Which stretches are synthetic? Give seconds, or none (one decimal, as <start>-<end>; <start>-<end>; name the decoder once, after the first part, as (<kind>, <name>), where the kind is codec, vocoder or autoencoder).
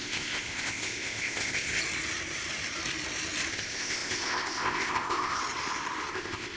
0.0-1.8 (codec, ZipCodec); 3.5-5.4; 6.1-6.6